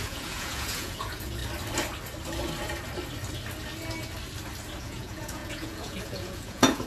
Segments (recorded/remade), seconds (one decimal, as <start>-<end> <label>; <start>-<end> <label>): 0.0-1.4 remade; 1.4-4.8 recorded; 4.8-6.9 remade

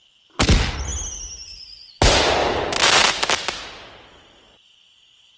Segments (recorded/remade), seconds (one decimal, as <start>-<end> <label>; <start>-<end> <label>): 0.0-5.4 recorded

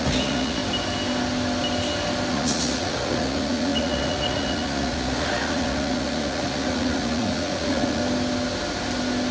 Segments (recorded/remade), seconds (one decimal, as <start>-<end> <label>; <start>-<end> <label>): 0.0-0.6 remade; 0.6-2.3 recorded; 2.3-8.0 remade; 8.0-9.3 recorded